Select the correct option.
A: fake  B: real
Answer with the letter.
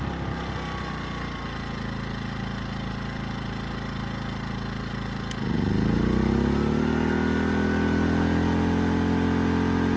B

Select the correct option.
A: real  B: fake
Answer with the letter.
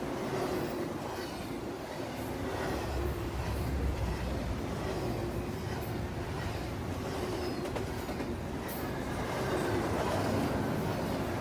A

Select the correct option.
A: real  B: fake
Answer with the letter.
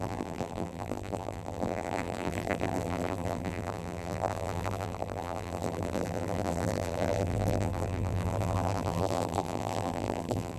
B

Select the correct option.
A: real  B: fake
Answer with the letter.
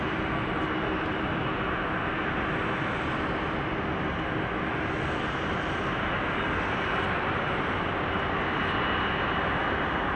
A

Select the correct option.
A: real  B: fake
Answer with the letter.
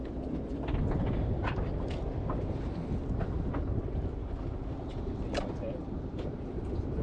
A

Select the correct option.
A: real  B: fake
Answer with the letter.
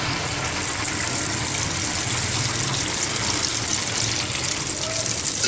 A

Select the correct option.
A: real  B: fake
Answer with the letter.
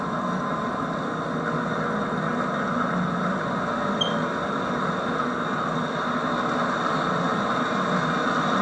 A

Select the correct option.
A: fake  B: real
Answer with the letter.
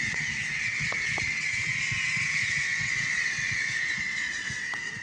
A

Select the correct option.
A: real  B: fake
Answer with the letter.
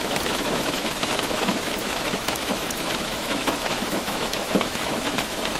B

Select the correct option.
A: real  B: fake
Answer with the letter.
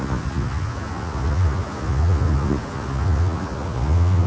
B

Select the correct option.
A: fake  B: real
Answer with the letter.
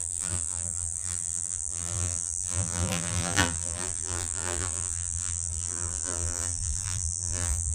A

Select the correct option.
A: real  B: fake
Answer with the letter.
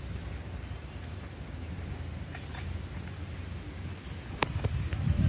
B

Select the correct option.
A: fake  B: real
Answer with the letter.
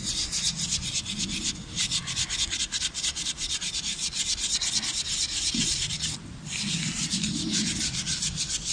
B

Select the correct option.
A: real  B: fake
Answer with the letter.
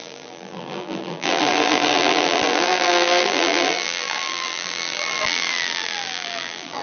B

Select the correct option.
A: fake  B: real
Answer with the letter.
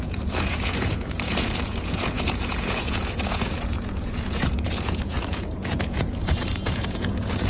A